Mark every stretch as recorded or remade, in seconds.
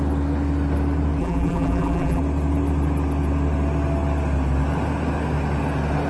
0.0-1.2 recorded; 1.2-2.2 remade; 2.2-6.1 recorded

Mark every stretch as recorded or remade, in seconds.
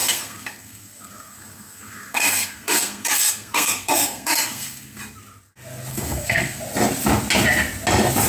0.0-5.0 remade; 5.0-5.9 recorded; 5.9-6.6 remade; 6.6-8.3 recorded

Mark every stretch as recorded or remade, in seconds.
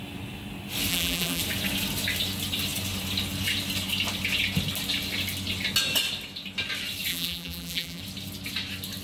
0.0-0.9 recorded; 0.9-1.4 remade; 1.4-7.1 recorded; 7.1-8.0 remade; 8.0-9.0 recorded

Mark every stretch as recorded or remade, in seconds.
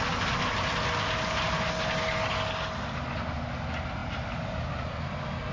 0.0-5.5 recorded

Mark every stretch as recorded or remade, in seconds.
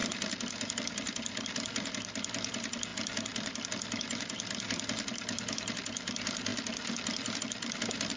0.0-8.2 recorded